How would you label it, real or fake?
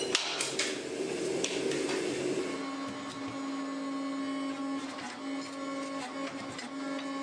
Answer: real